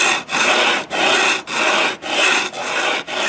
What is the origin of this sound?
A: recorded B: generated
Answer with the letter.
A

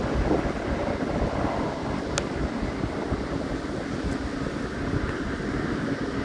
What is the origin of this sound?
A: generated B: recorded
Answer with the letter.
B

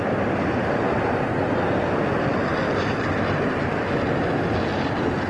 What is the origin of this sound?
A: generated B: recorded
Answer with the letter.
B